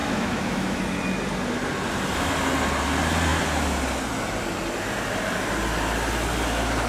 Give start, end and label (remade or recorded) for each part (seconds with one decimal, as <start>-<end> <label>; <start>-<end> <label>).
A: 0.0-0.8 remade; 0.8-6.9 recorded